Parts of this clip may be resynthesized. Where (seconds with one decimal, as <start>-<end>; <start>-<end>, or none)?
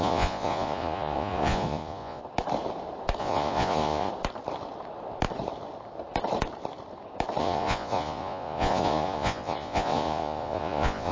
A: 0.0-2.2; 3.2-4.1; 7.4-11.1